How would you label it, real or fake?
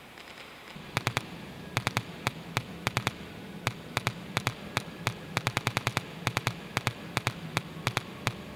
real